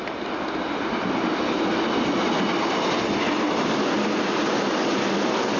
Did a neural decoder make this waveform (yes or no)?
no